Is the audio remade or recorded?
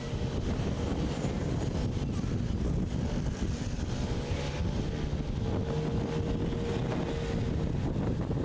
recorded